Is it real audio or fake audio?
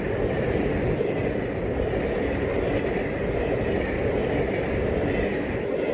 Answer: real